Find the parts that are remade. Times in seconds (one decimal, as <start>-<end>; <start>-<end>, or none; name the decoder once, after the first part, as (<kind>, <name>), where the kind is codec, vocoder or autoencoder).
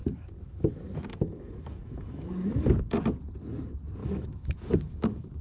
0.0-0.7 (autoencoder, DAC-VAE); 1.1-2.8; 4.0-5.4